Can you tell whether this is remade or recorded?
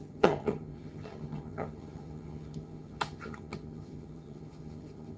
remade